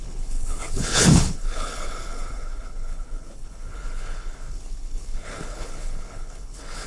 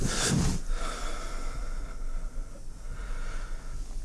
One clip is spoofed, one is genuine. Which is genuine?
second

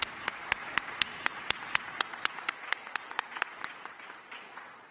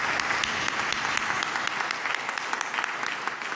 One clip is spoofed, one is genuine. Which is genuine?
second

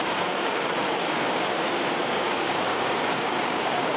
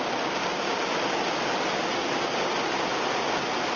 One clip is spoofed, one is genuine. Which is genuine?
second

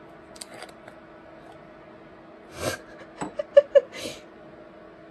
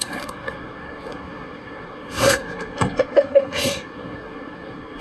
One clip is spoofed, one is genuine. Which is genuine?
first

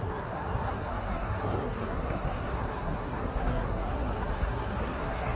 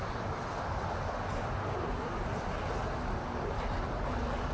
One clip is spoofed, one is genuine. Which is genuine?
second